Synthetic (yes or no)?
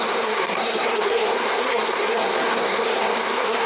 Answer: yes